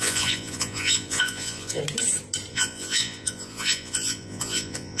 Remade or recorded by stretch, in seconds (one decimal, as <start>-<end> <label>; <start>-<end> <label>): 0.0-1.8 remade; 1.8-2.5 recorded; 2.5-5.0 remade